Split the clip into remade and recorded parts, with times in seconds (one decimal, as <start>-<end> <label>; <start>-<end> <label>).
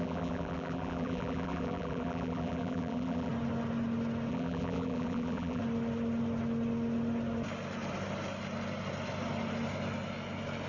0.0-3.3 remade; 3.3-4.3 recorded; 4.3-5.6 remade; 5.6-10.7 recorded